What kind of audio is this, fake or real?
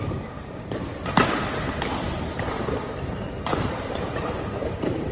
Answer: fake